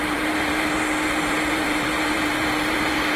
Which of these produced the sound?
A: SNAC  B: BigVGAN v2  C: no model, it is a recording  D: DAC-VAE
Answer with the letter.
B